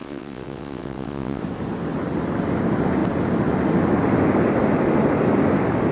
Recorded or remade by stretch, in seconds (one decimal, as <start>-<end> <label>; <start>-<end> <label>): 0.0-1.4 remade; 1.4-5.9 recorded

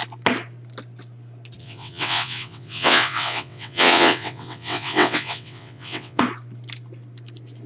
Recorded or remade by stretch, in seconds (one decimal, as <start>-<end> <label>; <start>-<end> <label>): 0.0-1.6 recorded; 1.6-6.2 remade; 6.2-7.7 recorded

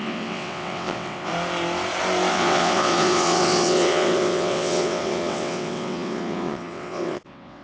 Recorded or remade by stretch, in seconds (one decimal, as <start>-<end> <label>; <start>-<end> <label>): 0.0-1.3 remade; 1.3-2.3 recorded; 2.3-7.6 remade